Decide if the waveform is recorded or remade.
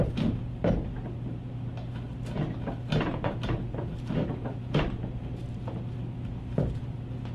recorded